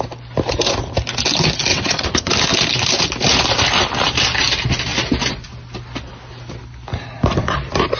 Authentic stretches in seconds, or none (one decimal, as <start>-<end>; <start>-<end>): 0.0-1.7; 2.3-8.0